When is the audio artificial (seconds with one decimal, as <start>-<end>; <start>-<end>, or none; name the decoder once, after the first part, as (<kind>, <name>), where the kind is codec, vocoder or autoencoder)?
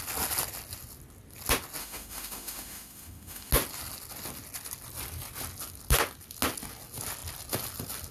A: 1.8-3.5 (autoencoder, DAC-VAE)